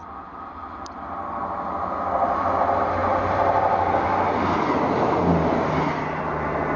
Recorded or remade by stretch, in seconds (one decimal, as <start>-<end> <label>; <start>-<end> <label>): 0.0-6.8 recorded